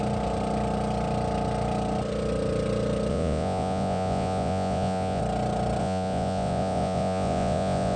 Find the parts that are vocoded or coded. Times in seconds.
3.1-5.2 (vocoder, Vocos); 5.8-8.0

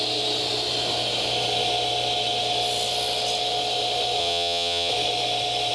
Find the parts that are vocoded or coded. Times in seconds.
4.2-4.9 (vocoder, Vocos)

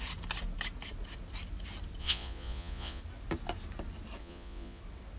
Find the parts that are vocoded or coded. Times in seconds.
2.0-3.0 (vocoder, Vocos); 4.2-4.8

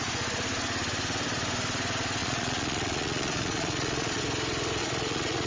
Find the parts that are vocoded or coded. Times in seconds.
2.2-4.2 (vocoder, Vocos); 4.8-5.5

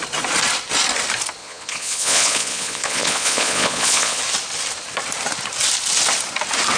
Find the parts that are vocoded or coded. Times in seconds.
1.4-4.2 (vocoder, Vocos)

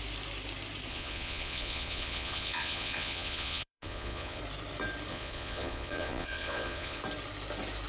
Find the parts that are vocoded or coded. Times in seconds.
0.9-4.4 (vocoder, Vocos); 5.1-7.0

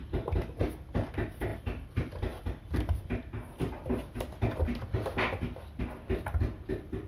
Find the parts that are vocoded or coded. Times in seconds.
none

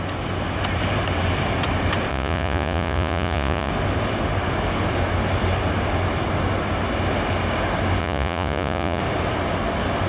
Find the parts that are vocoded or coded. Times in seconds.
2.1-3.7 (vocoder, Vocos); 8.0-9.0